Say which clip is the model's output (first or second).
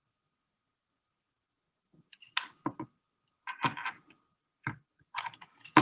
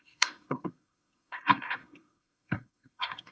second